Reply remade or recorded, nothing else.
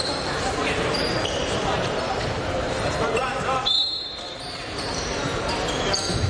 remade